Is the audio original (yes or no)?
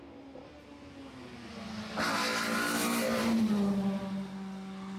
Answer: yes